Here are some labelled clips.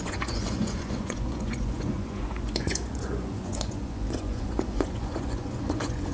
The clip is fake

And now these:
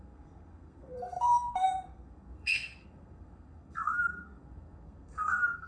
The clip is fake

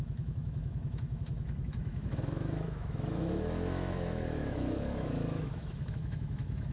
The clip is fake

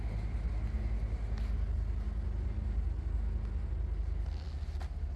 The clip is real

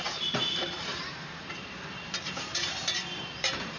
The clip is fake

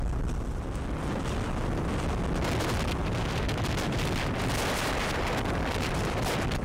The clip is fake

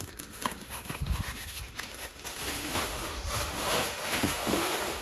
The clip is fake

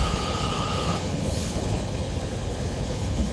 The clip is fake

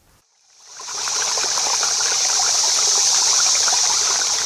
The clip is fake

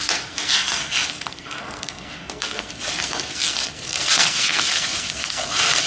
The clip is fake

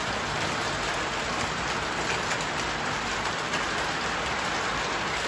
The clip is real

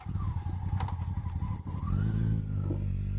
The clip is real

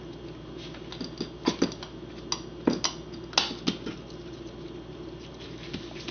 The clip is real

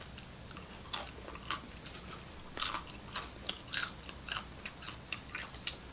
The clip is real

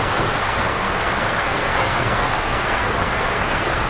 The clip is fake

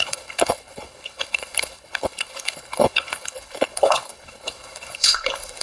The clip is fake